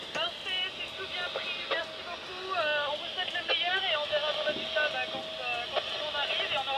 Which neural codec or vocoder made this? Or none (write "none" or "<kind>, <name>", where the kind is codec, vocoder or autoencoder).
none